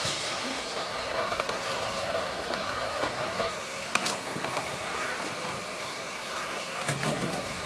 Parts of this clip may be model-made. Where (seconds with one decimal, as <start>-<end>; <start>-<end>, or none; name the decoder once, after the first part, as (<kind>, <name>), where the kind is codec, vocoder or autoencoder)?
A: 0.0-5.1 (codec, SNAC); 5.8-7.7